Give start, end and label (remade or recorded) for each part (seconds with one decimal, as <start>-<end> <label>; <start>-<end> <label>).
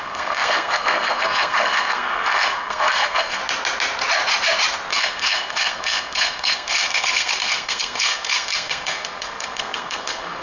0.0-3.4 remade; 3.4-4.9 recorded; 4.9-10.4 remade